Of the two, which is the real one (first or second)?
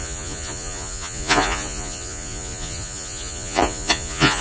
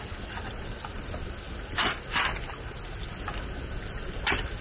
second